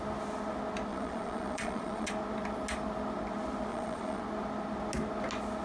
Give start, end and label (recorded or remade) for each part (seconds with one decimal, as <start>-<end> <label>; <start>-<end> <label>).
0.0-0.9 recorded; 0.9-2.1 remade; 2.1-3.7 recorded; 3.7-4.2 remade; 4.2-5.6 recorded